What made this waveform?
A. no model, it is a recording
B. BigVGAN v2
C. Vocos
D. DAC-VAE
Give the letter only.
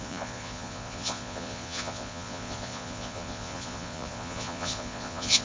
C